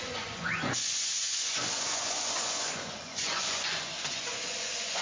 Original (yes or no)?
no